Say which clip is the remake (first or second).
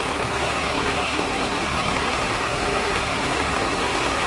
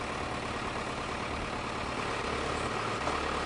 first